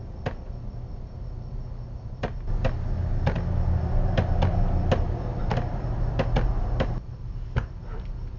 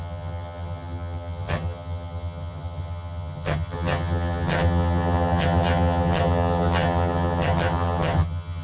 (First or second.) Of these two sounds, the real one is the first